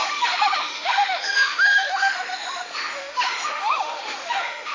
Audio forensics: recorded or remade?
remade